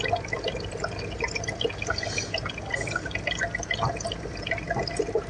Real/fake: real